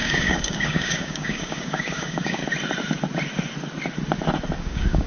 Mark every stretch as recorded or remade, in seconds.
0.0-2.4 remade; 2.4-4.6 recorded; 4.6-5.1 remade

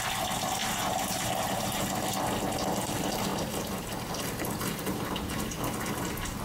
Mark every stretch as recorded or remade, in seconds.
0.0-0.6 recorded; 0.6-1.9 remade; 1.9-6.4 recorded

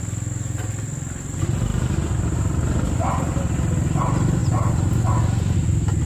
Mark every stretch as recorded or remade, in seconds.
0.0-6.0 recorded